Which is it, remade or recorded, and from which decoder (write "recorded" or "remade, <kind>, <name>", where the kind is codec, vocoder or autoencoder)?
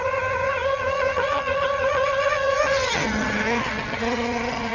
remade, vocoder, HiFi-GAN